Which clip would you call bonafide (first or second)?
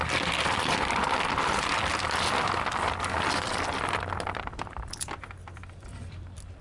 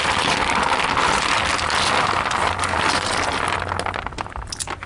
second